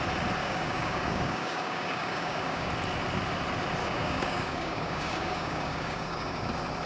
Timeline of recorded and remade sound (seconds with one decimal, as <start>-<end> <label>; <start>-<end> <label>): 0.0-0.4 recorded; 0.4-2.7 remade; 2.7-3.8 recorded; 3.8-6.5 remade; 6.5-6.9 recorded